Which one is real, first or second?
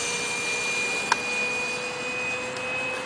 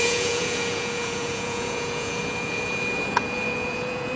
first